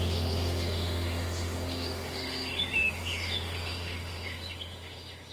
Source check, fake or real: fake